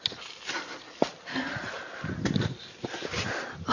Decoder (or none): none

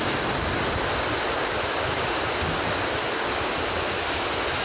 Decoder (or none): none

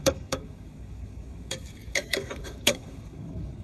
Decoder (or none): codec, DAC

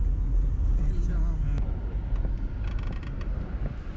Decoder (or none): none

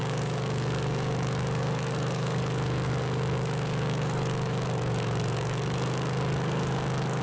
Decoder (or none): codec, DAC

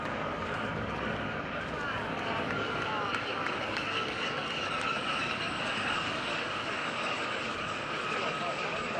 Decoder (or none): codec, DAC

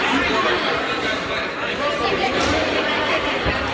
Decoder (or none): none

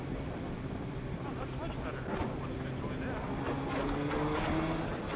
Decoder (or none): none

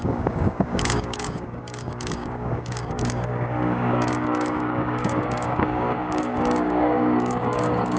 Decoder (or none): codec, DAC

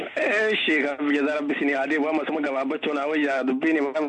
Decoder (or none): none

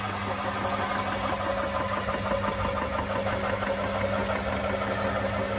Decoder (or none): none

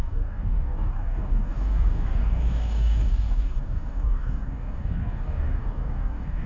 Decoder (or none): codec, DAC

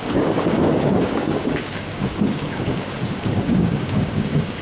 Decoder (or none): codec, DAC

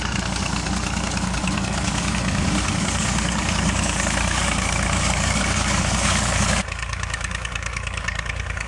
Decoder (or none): codec, DAC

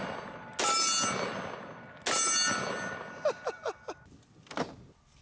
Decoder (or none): none